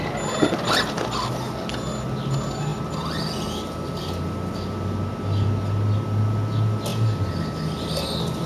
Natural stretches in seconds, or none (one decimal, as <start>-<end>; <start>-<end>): 0.0-8.5